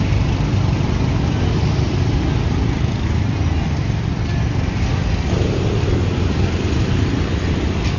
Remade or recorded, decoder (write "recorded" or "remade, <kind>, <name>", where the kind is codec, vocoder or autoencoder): recorded